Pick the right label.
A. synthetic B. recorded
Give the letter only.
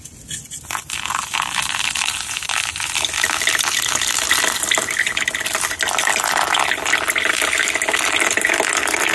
B